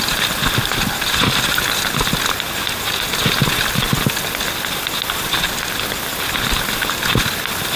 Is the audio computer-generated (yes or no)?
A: no